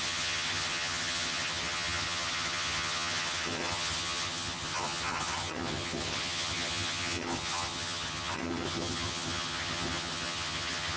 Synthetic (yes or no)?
yes